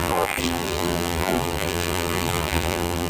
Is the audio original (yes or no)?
no